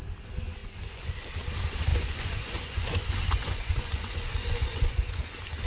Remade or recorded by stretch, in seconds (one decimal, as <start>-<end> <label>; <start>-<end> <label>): 0.0-0.6 recorded; 0.6-1.3 remade; 1.3-1.9 recorded; 1.9-5.3 remade; 5.3-5.7 recorded